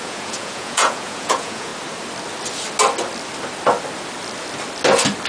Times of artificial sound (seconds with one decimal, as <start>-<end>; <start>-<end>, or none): 0.0-1.7